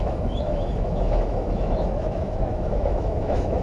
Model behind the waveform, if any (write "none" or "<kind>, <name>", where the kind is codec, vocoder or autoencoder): autoencoder, DAC-VAE